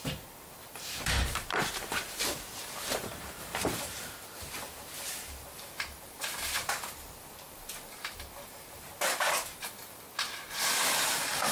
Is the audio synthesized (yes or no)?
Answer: yes